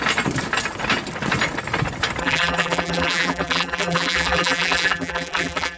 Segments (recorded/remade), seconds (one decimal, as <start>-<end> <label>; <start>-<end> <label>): 0.0-2.2 recorded; 2.2-5.8 remade